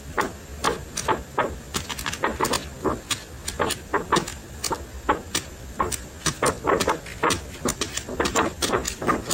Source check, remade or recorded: recorded